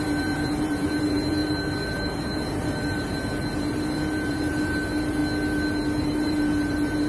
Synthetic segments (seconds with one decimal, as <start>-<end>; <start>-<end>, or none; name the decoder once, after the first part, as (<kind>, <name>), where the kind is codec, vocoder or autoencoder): 0.0-5.2 (vocoder, BigVGAN v2); 6.0-7.1

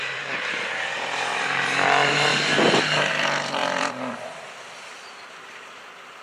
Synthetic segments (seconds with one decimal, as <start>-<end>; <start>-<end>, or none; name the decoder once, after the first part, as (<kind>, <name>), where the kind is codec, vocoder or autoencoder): 0.0-2.3 (vocoder, BigVGAN v2); 3.1-6.2

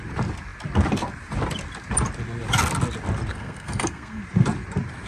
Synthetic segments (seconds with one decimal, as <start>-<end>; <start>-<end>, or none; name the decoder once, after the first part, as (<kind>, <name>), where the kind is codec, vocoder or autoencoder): 3.3-4.2 (codec, SNAC)